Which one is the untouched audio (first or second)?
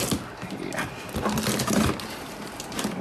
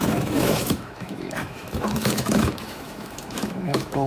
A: first